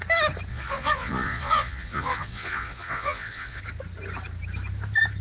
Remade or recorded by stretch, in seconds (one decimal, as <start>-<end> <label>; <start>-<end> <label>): 0.0-0.5 recorded; 0.5-3.6 remade; 3.6-5.2 recorded